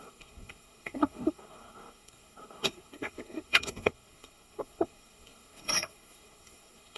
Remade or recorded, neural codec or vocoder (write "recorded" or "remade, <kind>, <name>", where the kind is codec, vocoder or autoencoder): remade, codec, SNAC